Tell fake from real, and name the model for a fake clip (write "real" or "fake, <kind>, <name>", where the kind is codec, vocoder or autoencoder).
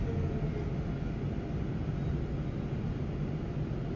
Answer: real